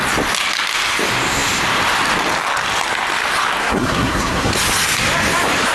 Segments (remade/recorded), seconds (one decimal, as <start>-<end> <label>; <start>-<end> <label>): 0.0-3.6 recorded; 3.6-4.5 remade; 4.5-5.7 recorded